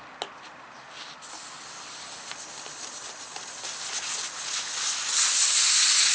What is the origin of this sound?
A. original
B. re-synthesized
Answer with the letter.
A